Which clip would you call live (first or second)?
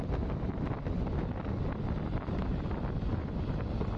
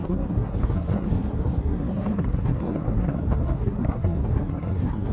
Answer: first